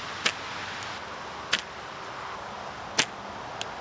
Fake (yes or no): no